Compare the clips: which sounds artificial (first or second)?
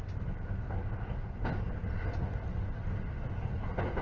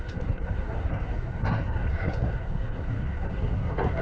second